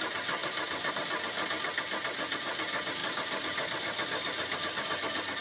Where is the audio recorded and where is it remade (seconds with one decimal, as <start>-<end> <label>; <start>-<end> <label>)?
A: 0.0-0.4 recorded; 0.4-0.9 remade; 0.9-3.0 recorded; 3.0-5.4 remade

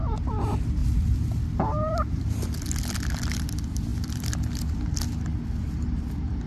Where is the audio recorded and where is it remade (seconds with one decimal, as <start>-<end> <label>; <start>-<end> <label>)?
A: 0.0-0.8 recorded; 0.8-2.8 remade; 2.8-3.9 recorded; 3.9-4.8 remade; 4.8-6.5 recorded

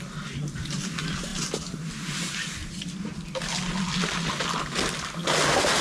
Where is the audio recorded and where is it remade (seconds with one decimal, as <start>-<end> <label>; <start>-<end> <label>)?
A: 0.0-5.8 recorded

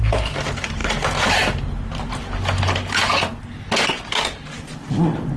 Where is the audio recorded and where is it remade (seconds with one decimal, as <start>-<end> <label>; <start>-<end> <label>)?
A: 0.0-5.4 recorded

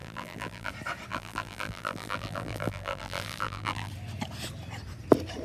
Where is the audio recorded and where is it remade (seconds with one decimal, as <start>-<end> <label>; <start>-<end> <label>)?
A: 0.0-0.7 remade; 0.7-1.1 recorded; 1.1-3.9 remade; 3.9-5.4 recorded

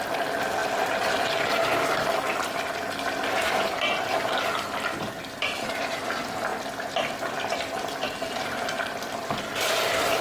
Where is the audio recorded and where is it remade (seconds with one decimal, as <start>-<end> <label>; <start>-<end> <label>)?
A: 0.0-10.2 recorded

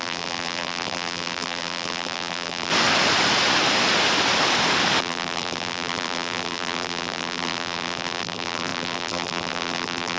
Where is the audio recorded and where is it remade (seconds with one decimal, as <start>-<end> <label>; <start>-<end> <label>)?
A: 0.0-2.7 remade; 2.7-5.0 recorded; 5.0-10.2 remade

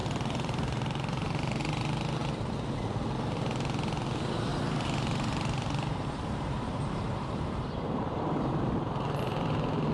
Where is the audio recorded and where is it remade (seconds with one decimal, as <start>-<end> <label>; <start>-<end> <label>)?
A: 0.0-1.6 remade; 1.6-4.5 recorded; 4.5-9.2 remade; 9.2-9.9 recorded